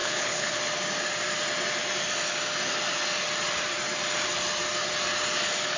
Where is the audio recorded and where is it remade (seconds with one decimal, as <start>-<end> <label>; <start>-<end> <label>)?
0.0-0.6 remade; 0.6-5.8 recorded